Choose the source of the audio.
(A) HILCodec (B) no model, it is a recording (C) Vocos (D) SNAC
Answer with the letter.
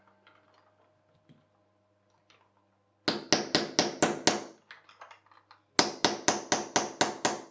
B